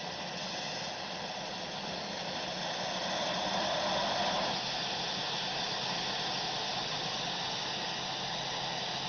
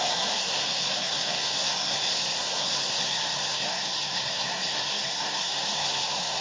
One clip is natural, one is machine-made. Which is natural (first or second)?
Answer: first